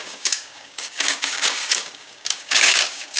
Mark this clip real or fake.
fake